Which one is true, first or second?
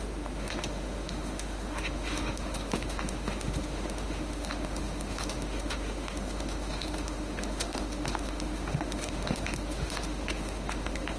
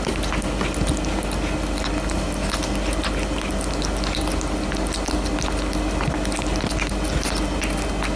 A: second